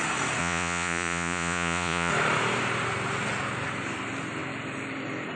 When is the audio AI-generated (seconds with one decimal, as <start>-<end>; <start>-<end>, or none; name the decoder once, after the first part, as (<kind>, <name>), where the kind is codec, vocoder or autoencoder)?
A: 0.4-2.1 (vocoder, Vocos)